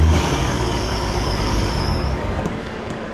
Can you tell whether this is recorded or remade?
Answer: remade